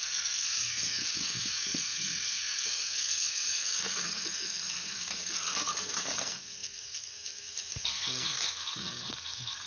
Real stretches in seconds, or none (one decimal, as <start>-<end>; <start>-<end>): none